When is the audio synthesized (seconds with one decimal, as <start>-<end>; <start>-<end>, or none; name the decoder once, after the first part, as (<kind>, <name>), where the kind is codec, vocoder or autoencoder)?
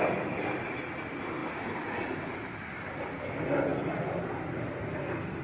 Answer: none